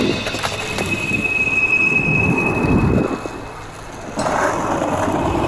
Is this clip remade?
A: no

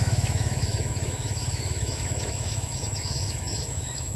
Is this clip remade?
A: yes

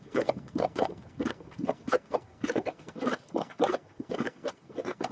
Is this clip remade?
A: yes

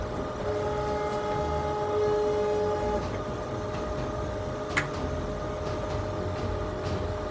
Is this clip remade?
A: no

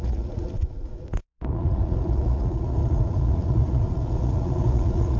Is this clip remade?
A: yes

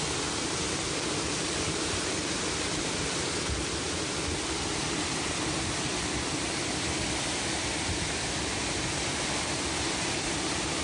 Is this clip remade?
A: no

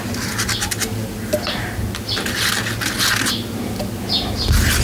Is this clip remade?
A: no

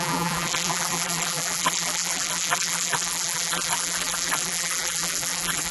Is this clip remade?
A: yes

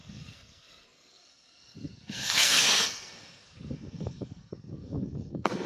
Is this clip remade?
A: yes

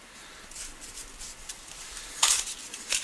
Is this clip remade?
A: yes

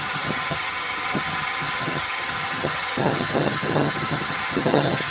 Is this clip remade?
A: yes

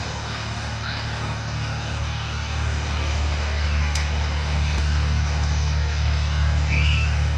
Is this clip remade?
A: yes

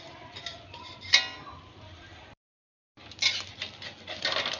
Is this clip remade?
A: no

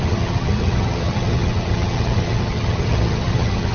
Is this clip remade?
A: yes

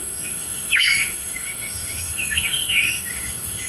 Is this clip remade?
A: yes